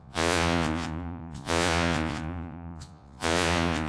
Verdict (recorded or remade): remade